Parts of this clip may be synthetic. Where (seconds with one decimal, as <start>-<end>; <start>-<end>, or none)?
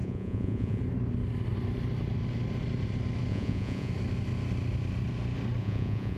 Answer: 0.0-0.8; 3.3-3.9; 5.6-6.2